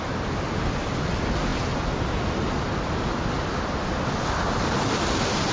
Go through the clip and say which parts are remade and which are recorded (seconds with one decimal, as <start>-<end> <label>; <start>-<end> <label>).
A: 0.0-5.5 recorded